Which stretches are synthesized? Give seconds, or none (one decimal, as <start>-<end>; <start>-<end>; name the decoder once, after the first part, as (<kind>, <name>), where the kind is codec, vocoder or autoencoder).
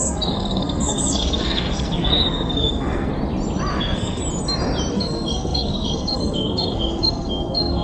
0.0-3.1 (codec, SNAC); 3.7-4.2; 4.9-7.8